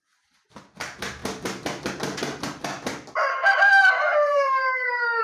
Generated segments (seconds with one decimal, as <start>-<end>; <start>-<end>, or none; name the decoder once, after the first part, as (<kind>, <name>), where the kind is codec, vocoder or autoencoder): 3.3-5.2 (codec, SNAC)